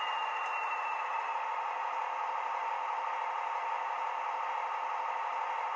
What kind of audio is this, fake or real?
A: real